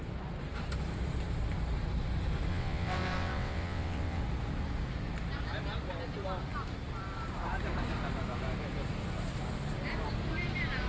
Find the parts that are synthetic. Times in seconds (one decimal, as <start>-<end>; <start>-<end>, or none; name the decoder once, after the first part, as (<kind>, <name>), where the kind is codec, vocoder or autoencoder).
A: 2.5-4.2 (vocoder, WaveNeXt)